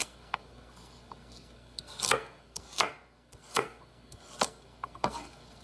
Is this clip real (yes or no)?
no